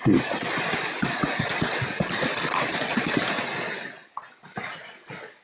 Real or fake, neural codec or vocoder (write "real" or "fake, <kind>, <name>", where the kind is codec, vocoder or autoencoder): real